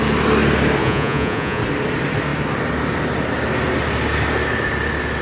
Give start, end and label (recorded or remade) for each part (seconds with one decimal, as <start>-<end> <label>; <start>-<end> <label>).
0.0-0.8 recorded; 0.8-1.6 remade; 1.6-5.2 recorded